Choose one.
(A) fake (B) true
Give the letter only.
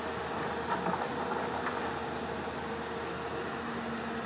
B